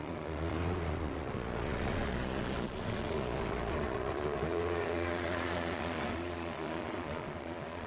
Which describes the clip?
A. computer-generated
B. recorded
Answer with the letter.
A